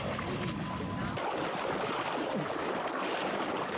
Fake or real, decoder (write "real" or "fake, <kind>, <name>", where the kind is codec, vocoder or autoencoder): real